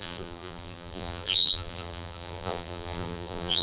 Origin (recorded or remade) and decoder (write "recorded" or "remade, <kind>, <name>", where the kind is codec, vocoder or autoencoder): remade, vocoder, BigVGAN v2